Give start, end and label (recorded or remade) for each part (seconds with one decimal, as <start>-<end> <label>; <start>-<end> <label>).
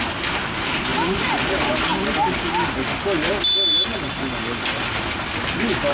0.0-1.9 remade; 1.9-5.4 recorded; 5.4-5.9 remade